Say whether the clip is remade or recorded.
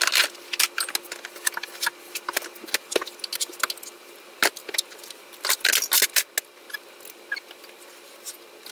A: recorded